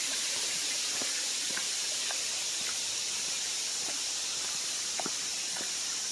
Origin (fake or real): real